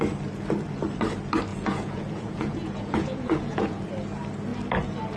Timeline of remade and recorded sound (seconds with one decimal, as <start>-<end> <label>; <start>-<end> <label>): 0.0-1.5 recorded; 1.5-3.8 remade; 3.8-5.2 recorded